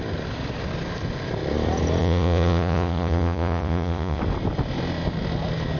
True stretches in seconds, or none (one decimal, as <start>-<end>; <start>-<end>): 0.0-2.0; 4.2-5.8